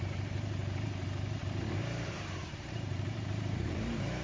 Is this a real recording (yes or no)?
no